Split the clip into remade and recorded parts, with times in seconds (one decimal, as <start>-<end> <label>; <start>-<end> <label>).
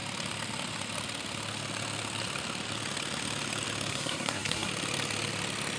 0.0-3.9 recorded; 3.9-4.7 remade; 4.7-5.8 recorded